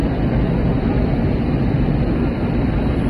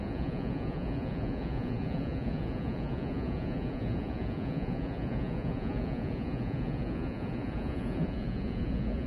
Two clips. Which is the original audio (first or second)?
first